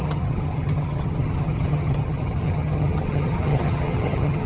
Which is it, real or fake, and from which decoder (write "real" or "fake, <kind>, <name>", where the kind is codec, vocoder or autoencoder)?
fake, vocoder, HiFi-GAN